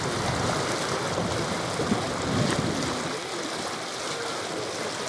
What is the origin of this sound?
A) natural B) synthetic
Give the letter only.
A